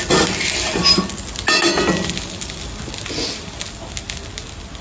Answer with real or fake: real